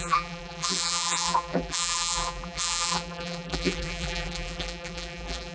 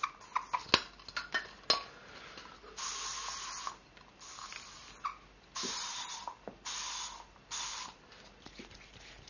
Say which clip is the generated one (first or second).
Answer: first